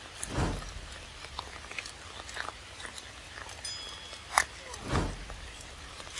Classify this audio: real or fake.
real